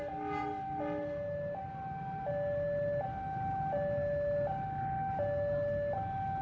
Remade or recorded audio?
recorded